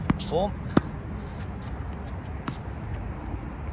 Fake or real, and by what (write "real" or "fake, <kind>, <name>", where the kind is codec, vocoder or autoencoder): real